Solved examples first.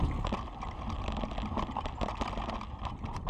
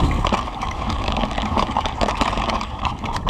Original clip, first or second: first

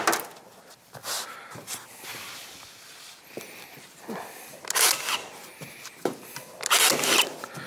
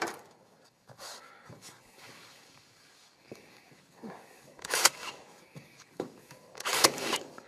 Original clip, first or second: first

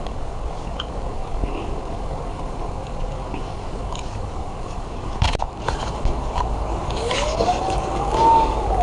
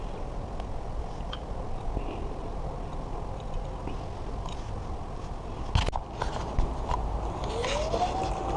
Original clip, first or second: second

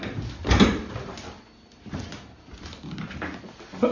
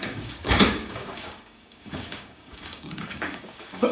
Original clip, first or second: first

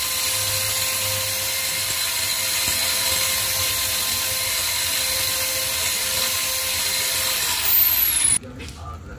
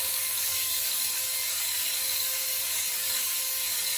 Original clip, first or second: first